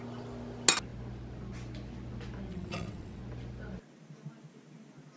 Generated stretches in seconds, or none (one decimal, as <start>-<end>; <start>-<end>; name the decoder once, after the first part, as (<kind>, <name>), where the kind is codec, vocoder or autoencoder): 2.5-3.2 (vocoder, WaveNeXt)